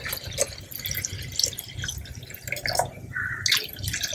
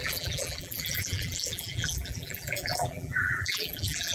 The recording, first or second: first